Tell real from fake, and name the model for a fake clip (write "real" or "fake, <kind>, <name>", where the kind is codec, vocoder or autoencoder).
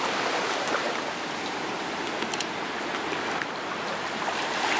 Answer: real